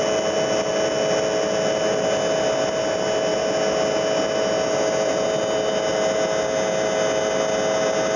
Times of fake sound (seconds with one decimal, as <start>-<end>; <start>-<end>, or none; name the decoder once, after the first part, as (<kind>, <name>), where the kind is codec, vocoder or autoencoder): none